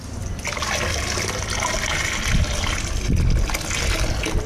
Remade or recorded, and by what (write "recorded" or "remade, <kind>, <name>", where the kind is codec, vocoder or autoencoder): recorded